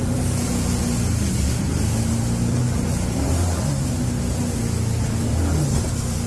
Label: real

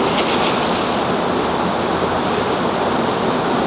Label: real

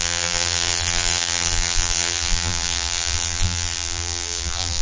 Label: fake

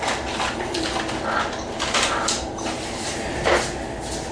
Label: real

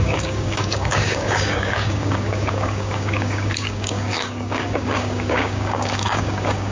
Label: fake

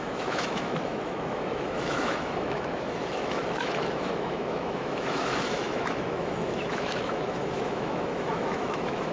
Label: fake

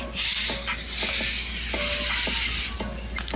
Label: real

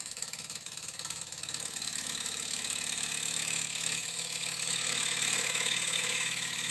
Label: fake